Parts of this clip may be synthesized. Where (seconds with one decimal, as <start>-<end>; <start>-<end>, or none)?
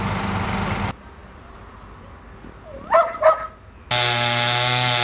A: none